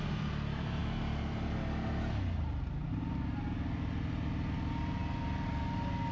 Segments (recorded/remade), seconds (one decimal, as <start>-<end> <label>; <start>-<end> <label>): 0.0-6.1 recorded